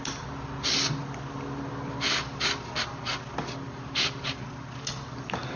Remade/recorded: recorded